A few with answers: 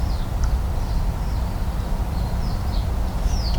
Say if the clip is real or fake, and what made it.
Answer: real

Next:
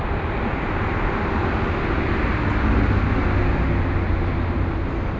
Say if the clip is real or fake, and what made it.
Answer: real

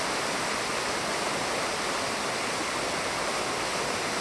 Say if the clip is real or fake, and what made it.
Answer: real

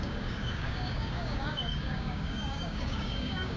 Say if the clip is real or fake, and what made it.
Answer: fake, codec, DAC